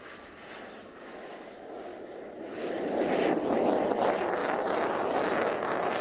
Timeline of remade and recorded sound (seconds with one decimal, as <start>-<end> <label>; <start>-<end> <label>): 0.0-6.0 recorded